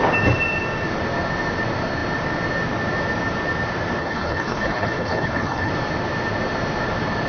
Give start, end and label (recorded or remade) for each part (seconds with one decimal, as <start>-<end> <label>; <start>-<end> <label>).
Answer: 0.0-4.0 recorded; 4.0-5.7 remade; 5.7-7.3 recorded